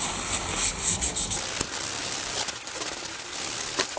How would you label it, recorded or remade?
recorded